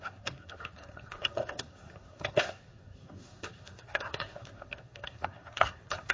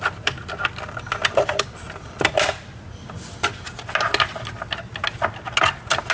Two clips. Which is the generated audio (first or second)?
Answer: first